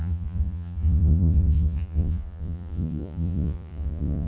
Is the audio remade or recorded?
remade